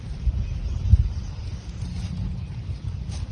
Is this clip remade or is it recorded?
recorded